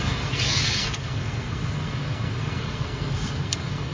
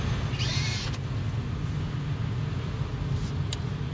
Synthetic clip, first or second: first